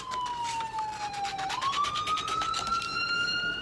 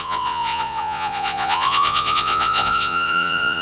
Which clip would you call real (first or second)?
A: first